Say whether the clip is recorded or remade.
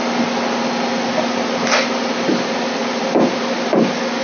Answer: recorded